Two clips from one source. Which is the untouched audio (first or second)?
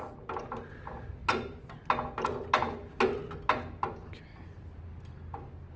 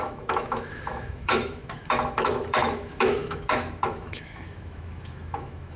first